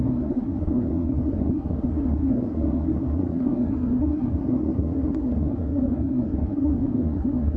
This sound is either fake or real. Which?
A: fake